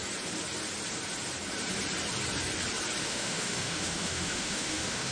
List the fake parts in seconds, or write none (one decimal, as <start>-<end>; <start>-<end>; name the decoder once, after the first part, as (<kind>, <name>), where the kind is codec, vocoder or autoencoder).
3.0-5.1 (autoencoder, DAC-VAE)

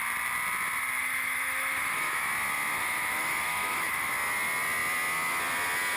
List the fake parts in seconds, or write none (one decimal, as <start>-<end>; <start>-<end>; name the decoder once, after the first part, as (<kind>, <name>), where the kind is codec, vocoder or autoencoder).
1.0-2.3 (autoencoder, DAC-VAE); 2.8-4.1

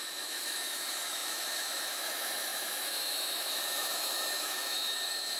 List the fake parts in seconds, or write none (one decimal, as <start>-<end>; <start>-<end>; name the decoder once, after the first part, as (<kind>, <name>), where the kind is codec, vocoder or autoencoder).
0.0-5.4 (autoencoder, DAC-VAE)

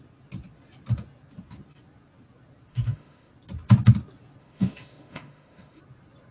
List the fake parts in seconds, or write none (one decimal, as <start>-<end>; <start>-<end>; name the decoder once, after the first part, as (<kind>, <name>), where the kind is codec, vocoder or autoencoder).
2.7-3.3 (autoencoder, DAC-VAE); 4.4-5.8

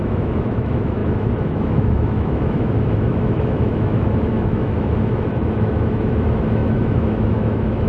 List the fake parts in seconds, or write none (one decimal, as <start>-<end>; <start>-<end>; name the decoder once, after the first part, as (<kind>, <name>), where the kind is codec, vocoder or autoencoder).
0.0-7.9 (autoencoder, DAC-VAE)

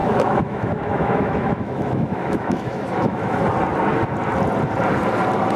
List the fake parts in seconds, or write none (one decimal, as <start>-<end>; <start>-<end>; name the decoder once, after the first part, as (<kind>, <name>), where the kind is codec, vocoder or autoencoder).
0.0-3.4 (autoencoder, DAC-VAE)